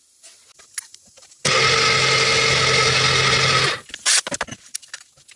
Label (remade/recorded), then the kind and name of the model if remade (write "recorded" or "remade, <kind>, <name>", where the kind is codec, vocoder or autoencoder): recorded